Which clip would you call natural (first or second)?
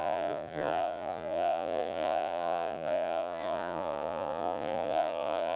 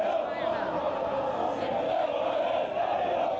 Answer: second